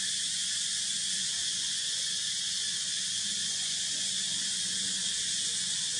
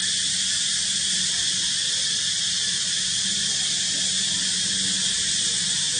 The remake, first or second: first